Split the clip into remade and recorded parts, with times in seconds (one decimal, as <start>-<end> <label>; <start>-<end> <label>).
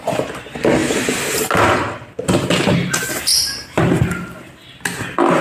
0.0-5.4 recorded